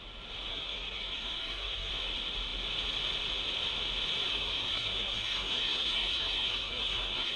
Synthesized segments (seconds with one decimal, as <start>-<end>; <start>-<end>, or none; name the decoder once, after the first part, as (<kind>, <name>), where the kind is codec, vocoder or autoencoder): 0.5-1.9 (codec, SNAC); 4.3-7.4

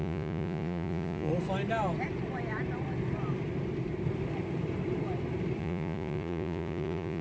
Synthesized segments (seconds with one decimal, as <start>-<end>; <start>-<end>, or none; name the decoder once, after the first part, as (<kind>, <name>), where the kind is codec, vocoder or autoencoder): 0.0-1.3 (vocoder, Vocos); 5.6-7.2

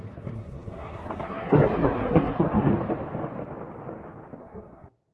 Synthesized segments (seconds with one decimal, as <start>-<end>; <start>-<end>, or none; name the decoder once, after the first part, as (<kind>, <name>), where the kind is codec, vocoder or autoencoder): 0.0-2.7 (codec, SNAC); 4.4-5.1